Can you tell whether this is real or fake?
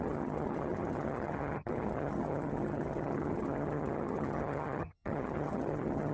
fake